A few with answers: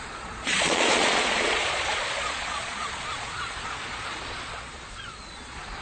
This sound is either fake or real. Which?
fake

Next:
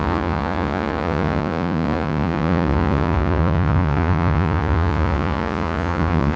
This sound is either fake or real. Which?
fake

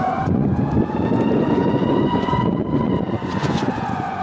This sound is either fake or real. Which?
fake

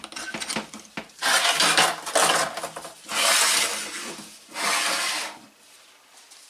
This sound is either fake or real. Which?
real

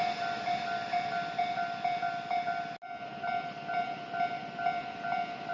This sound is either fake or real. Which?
real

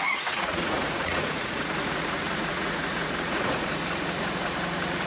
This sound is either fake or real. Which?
fake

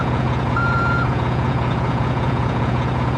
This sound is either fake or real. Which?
fake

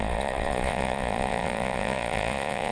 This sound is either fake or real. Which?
fake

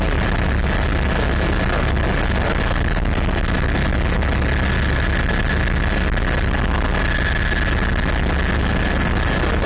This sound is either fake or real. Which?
real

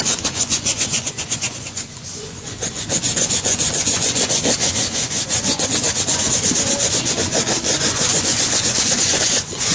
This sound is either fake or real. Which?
fake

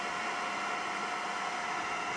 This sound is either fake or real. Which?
real